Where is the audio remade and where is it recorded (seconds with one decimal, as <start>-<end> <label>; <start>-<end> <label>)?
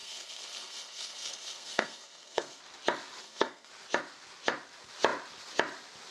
0.0-2.6 remade; 2.6-3.2 recorded; 3.2-3.7 remade; 3.7-6.1 recorded